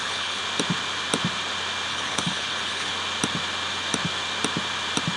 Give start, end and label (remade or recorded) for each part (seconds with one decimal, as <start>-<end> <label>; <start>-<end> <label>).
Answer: 0.0-0.4 remade; 0.4-1.9 recorded; 1.9-2.9 remade; 2.9-5.2 recorded